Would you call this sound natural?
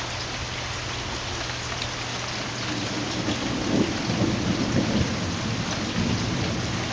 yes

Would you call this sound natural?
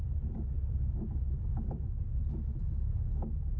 yes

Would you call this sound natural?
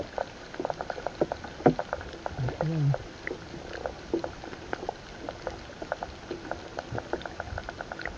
yes